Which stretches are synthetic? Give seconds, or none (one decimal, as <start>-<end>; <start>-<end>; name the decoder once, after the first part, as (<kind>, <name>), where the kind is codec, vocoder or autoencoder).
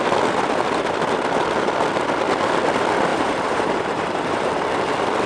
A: 3.1-4.5 (vocoder, BigVGAN v2)